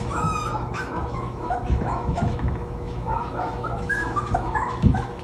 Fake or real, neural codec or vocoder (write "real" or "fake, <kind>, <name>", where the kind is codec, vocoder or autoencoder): fake, autoencoder, DAC-VAE